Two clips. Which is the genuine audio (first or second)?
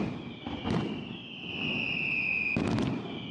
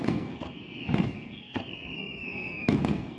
first